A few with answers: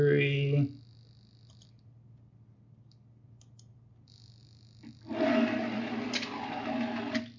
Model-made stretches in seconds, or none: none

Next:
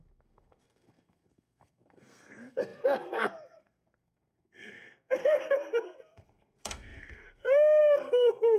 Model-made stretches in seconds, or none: 0.0-8.6 (codec, SNAC)

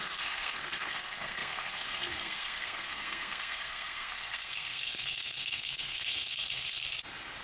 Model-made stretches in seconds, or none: 0.0-6.8 (codec, SNAC)

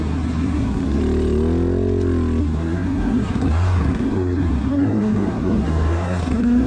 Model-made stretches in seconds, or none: 0.0-1.0 (codec, SNAC); 2.4-6.7